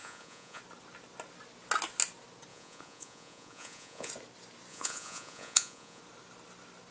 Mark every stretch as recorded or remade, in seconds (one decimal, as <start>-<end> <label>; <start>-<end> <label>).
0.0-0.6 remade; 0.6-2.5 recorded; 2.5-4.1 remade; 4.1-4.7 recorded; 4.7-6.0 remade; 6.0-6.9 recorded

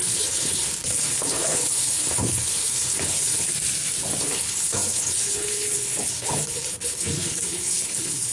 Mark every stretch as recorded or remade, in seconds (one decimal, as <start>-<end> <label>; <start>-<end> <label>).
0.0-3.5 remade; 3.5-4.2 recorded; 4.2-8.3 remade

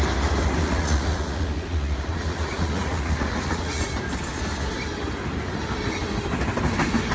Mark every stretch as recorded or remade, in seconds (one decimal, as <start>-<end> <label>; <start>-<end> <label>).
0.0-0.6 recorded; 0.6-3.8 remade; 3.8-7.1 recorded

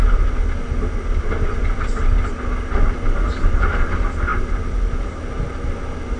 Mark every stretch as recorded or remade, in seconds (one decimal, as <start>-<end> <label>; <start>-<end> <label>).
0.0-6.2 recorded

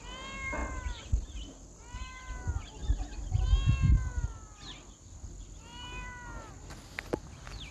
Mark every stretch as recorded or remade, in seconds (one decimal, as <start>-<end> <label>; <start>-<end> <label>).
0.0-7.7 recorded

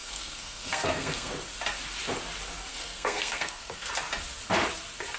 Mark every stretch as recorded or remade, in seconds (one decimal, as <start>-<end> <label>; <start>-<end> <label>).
0.0-1.3 remade; 1.3-2.7 recorded; 2.7-3.9 remade; 3.9-5.2 recorded